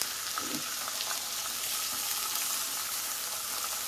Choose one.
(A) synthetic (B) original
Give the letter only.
B